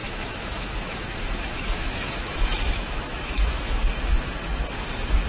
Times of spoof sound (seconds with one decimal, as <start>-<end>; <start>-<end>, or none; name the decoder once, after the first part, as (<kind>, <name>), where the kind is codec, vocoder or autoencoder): 0.0-3.8 (autoencoder, DAC-VAE)